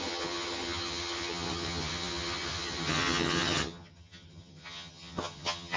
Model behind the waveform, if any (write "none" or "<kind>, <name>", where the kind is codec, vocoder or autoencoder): vocoder, HiFi-GAN